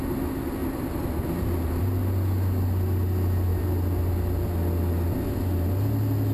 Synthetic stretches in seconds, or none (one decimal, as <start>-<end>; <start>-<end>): none